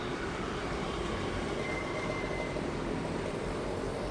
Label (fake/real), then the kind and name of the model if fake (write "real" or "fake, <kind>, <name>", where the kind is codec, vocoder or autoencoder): fake, vocoder, BigVGAN v2